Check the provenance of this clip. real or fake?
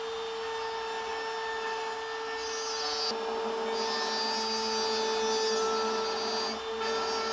real